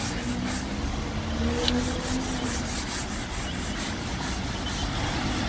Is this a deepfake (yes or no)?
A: no